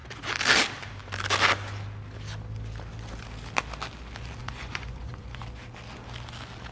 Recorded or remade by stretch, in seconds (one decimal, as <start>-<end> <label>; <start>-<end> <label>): 0.0-4.4 recorded; 4.4-5.4 remade; 5.4-6.7 recorded